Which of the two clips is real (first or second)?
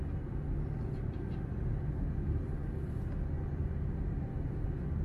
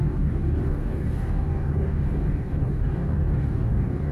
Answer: first